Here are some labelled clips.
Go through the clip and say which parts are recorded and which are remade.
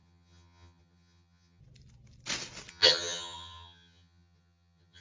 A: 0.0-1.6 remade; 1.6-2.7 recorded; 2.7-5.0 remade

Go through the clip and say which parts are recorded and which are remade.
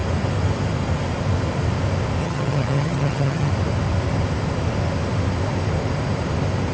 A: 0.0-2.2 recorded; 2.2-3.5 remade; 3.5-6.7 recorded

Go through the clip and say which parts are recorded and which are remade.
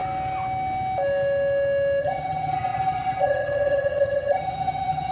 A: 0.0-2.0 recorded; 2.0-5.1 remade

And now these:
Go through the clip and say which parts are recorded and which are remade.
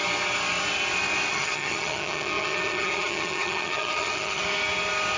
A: 0.0-1.3 recorded; 1.3-4.4 remade; 4.4-5.2 recorded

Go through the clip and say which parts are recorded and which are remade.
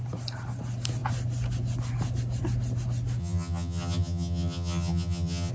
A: 0.0-3.2 recorded; 3.2-5.5 remade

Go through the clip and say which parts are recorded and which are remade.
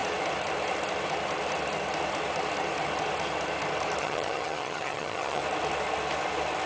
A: 0.0-4.0 recorded; 4.0-5.4 remade; 5.4-6.7 recorded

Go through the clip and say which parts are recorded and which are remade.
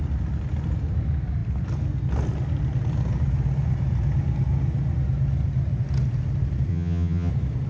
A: 0.0-6.7 recorded; 6.7-7.3 remade; 7.3-7.7 recorded